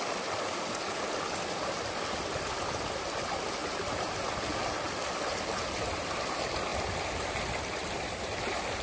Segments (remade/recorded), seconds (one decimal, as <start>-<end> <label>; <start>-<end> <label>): 0.0-8.8 recorded